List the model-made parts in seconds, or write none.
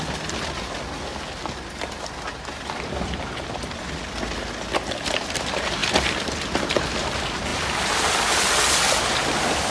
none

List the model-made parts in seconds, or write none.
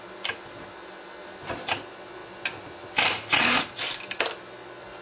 none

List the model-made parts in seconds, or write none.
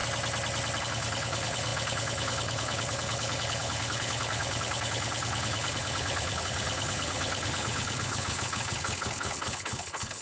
0.8-10.2 (codec, HILCodec)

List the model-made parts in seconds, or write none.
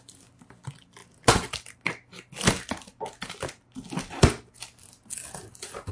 none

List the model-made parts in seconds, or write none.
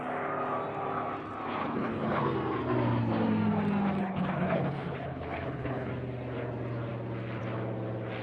1.6-2.2 (codec, HILCodec); 4.0-5.9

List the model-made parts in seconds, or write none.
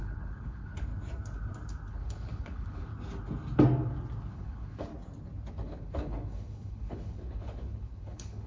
0.0-0.9 (codec, HILCodec); 1.9-2.9; 4.3-4.9; 5.5-8.5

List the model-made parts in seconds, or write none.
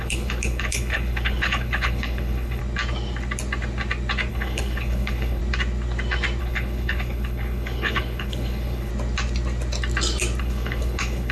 0.0-2.6 (codec, HILCodec); 4.3-5.4; 6.4-8.9; 10.4-11.3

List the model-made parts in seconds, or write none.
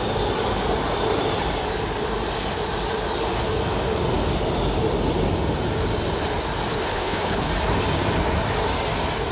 6.7-7.5 (codec, HILCodec)